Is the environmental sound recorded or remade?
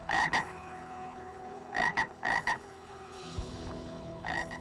remade